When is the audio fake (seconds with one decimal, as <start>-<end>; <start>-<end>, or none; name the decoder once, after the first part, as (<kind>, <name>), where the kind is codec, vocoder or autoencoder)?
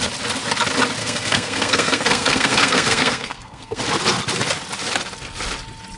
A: 1.0-3.8 (codec, SNAC)